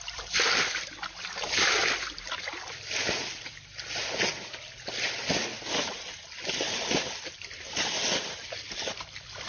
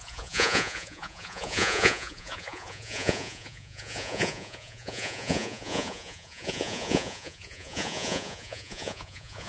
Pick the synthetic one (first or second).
second